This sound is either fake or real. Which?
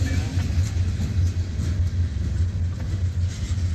real